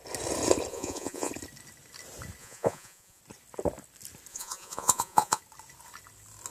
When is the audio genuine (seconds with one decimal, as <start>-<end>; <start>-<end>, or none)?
0.0-0.7; 1.3-2.4; 3.2-4.3; 5.4-6.5